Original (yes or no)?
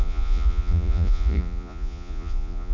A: no